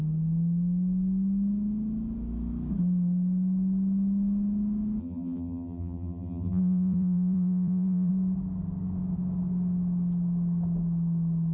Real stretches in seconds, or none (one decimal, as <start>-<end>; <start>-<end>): 0.0-5.0; 8.1-11.5